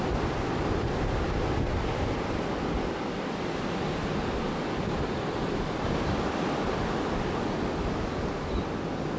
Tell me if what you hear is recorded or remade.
recorded